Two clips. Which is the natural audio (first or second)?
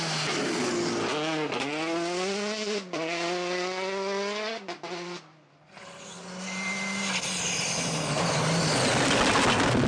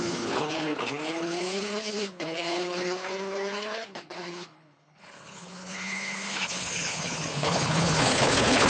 first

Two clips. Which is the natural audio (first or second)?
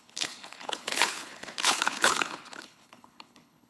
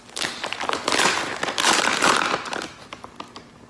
second